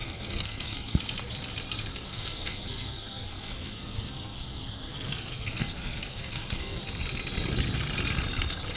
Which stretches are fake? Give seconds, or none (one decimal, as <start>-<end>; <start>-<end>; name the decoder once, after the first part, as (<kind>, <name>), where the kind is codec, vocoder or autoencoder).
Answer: 0.0-1.0 (codec, SNAC); 1.9-6.8